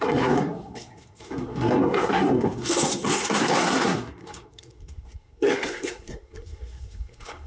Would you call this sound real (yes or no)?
no